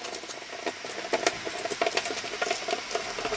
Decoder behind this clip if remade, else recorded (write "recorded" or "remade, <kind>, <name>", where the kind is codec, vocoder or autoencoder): recorded